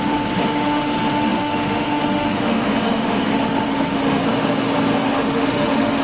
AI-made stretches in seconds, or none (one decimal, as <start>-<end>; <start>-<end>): 0.0-4.2; 5.1-6.0